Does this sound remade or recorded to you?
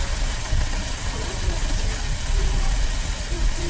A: remade